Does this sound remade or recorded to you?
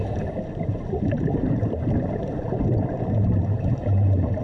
remade